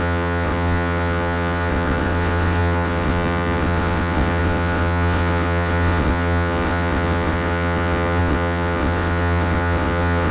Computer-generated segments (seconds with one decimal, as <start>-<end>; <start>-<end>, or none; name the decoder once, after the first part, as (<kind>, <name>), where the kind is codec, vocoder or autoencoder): 0.0-10.3 (vocoder, WaveNeXt)